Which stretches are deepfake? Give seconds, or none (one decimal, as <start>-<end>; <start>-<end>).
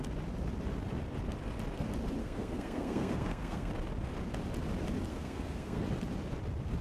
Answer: 2.2-3.7; 5.1-5.8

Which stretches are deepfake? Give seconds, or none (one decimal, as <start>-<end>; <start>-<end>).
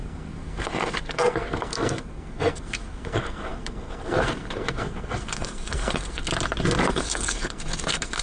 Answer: 0.0-6.3; 6.9-8.2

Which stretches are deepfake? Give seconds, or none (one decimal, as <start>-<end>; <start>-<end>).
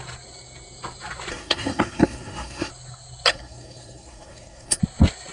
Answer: 1.3-2.7; 3.3-4.8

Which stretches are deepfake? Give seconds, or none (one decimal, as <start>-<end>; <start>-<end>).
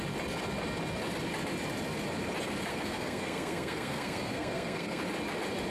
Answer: 2.7-5.0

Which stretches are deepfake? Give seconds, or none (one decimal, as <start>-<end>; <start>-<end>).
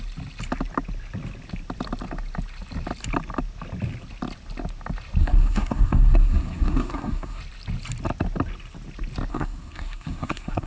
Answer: 5.2-7.4; 9.3-10.7